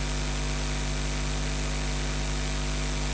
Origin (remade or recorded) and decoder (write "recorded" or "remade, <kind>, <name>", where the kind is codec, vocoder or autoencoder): recorded